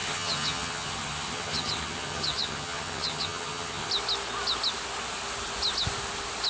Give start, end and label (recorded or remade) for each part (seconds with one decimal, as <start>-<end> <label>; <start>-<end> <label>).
0.0-3.9 remade; 3.9-6.5 recorded